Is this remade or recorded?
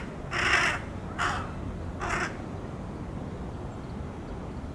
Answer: recorded